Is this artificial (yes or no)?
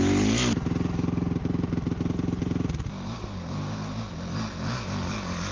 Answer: no